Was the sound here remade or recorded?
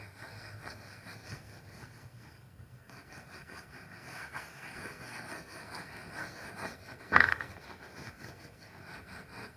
remade